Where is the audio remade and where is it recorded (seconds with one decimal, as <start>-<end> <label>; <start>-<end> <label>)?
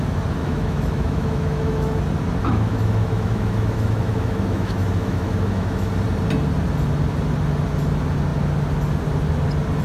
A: 0.0-0.4 recorded; 0.4-2.0 remade; 2.0-2.4 recorded; 2.4-5.9 remade; 5.9-9.8 recorded